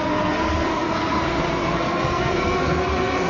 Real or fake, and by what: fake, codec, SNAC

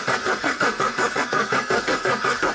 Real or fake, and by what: fake, codec, SNAC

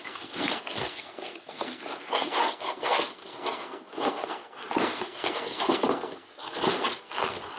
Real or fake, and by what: fake, codec, SNAC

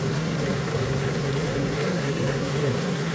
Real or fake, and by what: fake, codec, SNAC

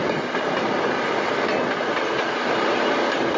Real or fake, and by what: real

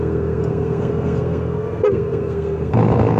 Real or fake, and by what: fake, codec, SNAC